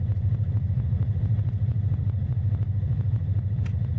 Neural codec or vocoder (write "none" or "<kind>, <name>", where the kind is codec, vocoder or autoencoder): vocoder, Vocos